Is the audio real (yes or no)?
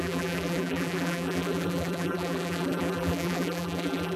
no